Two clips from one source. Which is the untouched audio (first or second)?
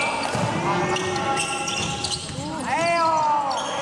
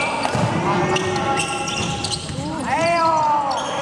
first